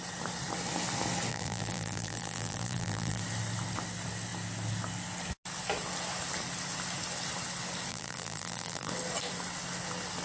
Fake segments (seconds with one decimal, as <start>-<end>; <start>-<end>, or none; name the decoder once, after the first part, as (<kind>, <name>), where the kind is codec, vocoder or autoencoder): 1.3-3.2 (vocoder, BigVGAN v2); 7.9-8.9